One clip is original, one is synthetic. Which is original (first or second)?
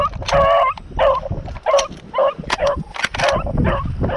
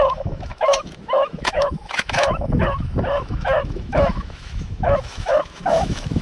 first